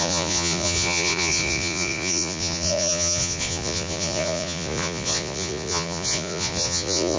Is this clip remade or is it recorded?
remade